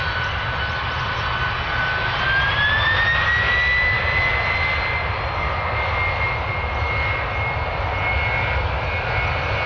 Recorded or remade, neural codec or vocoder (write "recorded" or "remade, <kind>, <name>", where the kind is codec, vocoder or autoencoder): recorded